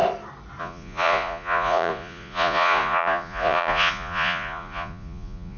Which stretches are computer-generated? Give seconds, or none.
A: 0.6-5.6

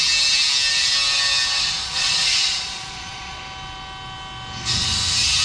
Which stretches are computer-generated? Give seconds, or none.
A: 1.8-3.4